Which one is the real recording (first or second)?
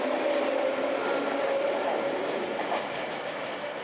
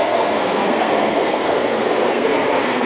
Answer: first